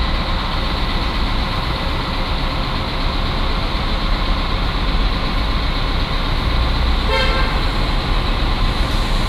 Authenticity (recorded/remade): recorded